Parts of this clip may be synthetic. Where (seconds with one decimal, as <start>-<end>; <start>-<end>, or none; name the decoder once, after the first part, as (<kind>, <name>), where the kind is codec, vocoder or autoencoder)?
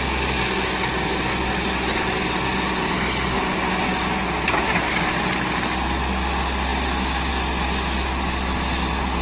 none